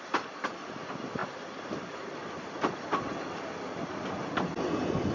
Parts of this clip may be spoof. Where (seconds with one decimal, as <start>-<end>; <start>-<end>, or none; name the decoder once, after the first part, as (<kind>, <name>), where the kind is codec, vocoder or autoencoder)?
none